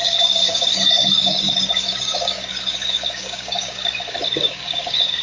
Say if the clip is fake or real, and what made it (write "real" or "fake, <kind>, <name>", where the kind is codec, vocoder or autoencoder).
fake, codec, DAC